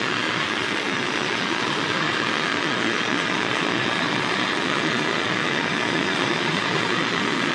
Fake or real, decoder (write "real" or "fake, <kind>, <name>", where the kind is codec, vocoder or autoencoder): fake, vocoder, Vocos